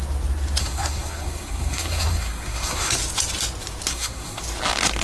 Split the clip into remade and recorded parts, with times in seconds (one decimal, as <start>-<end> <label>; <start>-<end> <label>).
0.0-0.6 recorded; 0.6-2.9 remade; 2.9-3.9 recorded; 3.9-4.4 remade; 4.4-5.0 recorded